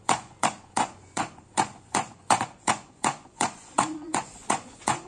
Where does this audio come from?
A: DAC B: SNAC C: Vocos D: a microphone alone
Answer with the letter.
C